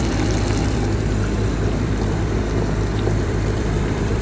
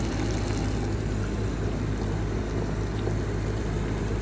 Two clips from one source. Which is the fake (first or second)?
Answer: first